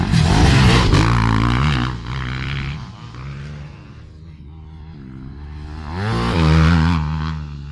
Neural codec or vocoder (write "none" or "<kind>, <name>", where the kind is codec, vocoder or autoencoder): none